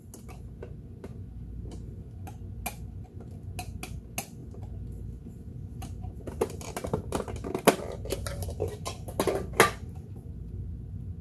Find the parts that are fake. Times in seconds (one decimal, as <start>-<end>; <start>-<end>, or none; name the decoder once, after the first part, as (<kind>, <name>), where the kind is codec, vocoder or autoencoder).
none